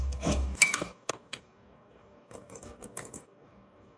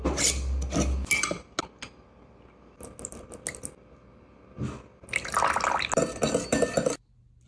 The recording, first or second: second